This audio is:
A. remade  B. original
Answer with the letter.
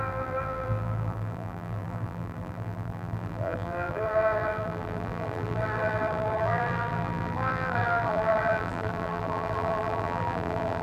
A